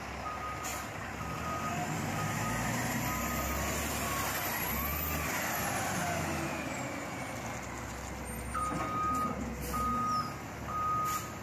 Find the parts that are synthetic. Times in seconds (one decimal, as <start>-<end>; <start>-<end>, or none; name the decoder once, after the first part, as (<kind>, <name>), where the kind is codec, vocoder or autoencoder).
none